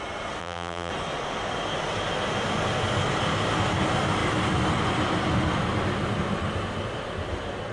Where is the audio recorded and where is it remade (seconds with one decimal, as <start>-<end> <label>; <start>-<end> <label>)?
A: 0.0-0.4 recorded; 0.4-0.9 remade; 0.9-7.7 recorded